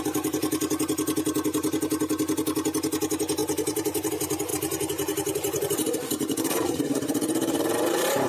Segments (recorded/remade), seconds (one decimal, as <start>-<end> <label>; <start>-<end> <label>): 0.0-3.4 recorded; 3.4-4.1 remade; 4.1-4.5 recorded; 4.5-8.3 remade